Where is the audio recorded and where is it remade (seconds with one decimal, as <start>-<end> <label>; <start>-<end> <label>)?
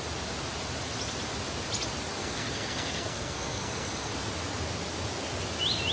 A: 0.0-2.2 recorded; 2.2-4.1 remade; 4.1-5.9 recorded